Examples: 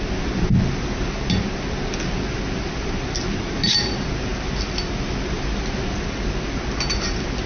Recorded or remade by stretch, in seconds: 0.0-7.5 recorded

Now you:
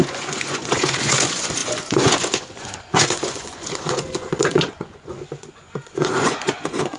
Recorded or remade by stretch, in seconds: 0.0-7.0 remade

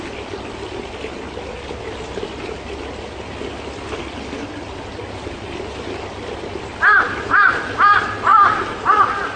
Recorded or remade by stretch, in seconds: 0.0-9.4 recorded

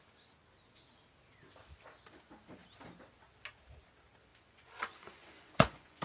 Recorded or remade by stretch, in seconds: 0.0-4.3 recorded; 4.3-6.0 remade